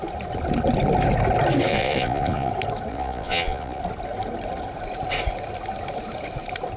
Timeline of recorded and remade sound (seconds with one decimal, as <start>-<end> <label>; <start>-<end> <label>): 0.0-1.7 recorded; 1.7-2.5 remade; 2.5-2.9 recorded; 2.9-3.8 remade; 3.8-6.8 recorded